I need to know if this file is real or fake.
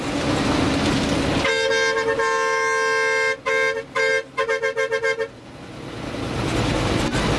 real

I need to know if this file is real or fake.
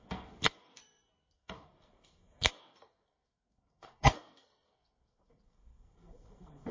fake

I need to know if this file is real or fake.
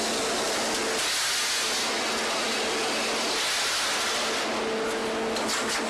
real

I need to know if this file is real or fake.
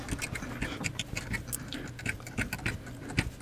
real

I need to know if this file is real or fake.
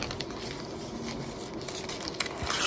real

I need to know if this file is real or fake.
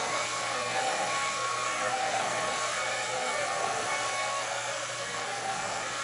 fake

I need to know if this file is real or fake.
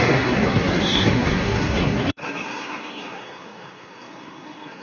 fake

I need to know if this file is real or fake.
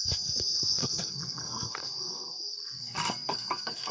fake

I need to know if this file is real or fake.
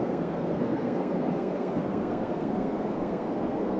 fake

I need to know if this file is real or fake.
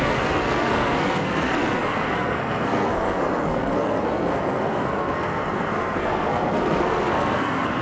fake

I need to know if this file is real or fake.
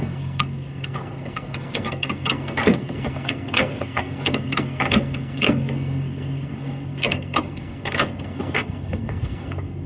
fake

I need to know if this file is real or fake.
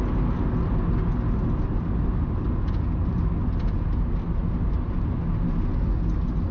real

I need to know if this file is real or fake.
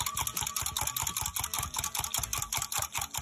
real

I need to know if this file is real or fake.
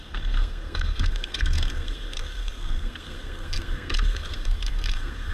fake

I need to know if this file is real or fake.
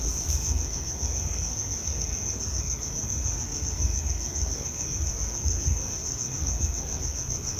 fake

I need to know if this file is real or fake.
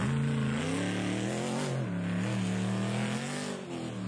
real